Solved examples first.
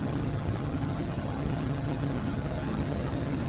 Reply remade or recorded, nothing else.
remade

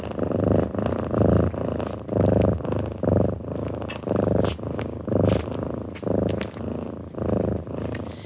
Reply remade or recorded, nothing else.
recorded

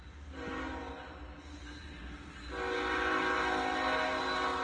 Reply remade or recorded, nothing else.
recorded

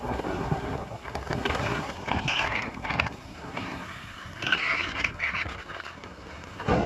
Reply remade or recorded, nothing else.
remade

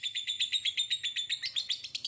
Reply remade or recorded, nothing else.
recorded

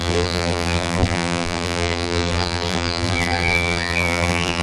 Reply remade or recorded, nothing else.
remade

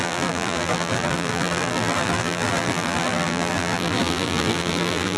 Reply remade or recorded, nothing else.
remade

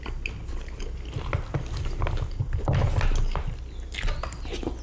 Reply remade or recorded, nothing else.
recorded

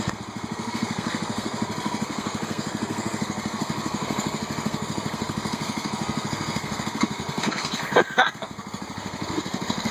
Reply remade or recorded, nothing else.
remade